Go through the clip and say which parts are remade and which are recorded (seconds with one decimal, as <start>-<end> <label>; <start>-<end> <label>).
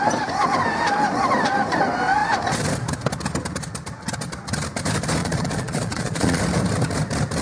0.0-5.2 recorded; 5.2-6.4 remade; 6.4-7.4 recorded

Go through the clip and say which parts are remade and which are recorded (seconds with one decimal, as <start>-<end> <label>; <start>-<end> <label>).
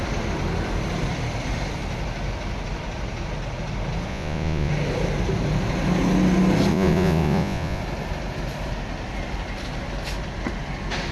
0.0-4.1 recorded; 4.1-4.7 remade; 4.7-6.7 recorded; 6.7-7.8 remade; 7.8-11.1 recorded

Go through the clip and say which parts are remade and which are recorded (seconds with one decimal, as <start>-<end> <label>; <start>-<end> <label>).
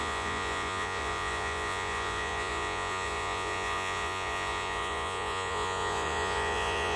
0.0-7.0 remade